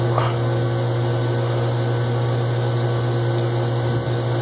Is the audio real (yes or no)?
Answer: yes